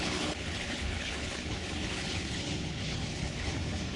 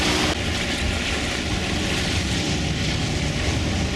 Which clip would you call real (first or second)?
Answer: second